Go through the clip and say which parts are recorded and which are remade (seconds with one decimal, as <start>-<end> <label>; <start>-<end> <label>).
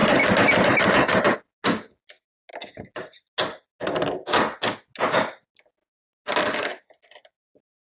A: 0.0-7.9 recorded